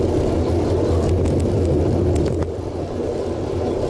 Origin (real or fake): real